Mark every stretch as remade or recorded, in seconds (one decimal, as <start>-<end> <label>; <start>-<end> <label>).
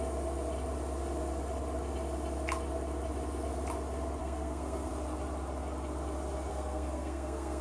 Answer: 0.0-4.2 recorded; 4.2-4.9 remade; 4.9-6.5 recorded; 6.5-7.6 remade